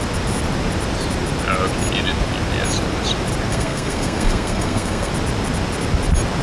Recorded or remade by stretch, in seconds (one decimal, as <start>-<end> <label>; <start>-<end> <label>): 0.0-3.5 recorded; 3.5-5.1 remade; 5.1-6.4 recorded